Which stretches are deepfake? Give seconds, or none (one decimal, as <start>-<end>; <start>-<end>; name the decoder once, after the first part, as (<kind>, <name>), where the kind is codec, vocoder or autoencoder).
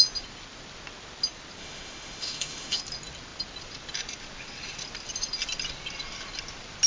1.6-2.8 (autoencoder, DAC-VAE)